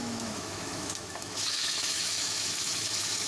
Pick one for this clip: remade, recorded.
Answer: remade